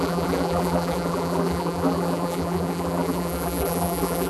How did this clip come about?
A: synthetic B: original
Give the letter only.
A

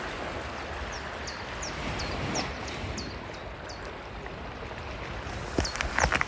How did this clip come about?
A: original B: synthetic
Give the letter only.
A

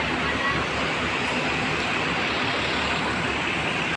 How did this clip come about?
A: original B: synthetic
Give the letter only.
A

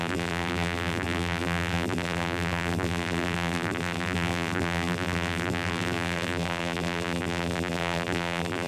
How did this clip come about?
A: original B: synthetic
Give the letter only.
B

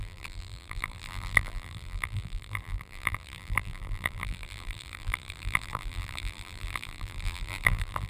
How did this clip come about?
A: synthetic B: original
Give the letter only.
A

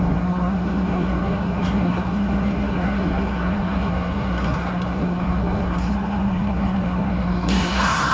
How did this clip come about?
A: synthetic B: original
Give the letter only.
A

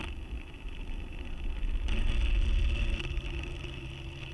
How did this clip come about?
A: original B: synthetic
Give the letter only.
A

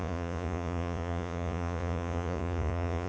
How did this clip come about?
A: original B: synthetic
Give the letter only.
B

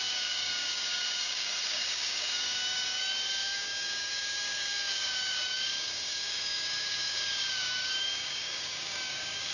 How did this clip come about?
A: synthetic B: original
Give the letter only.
A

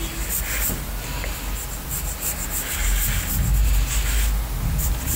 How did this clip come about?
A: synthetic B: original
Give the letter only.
B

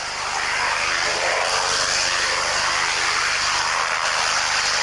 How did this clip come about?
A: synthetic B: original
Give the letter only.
B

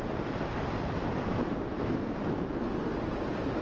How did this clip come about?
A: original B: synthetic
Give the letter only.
A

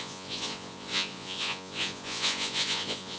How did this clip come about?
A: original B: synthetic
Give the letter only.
B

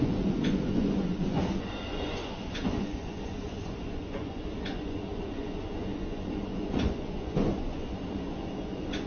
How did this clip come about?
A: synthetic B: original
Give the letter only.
A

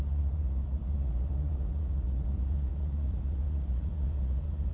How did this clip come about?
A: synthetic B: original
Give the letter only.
A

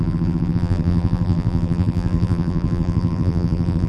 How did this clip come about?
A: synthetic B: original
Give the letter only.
A